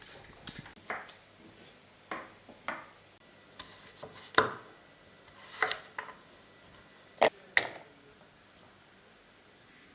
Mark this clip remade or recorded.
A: recorded